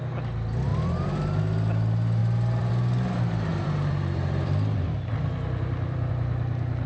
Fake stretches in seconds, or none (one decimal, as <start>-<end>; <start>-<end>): 0.7-1.4; 2.2-2.7; 3.5-6.1